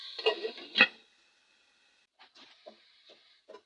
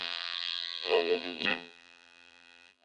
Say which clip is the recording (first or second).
first